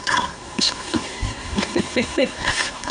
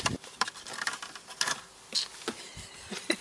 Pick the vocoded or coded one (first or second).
first